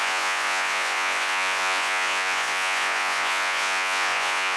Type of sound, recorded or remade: remade